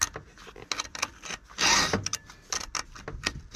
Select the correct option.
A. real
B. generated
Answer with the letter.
A